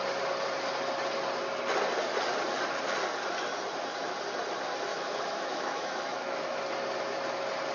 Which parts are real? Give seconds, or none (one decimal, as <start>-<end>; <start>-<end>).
0.0-4.9; 6.6-7.7